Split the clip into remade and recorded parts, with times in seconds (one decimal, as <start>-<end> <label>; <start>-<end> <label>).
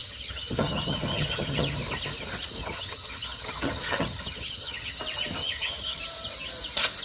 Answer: 0.0-1.8 remade; 1.8-2.6 recorded; 2.6-5.0 remade; 5.0-5.4 recorded; 5.4-6.0 remade; 6.0-7.0 recorded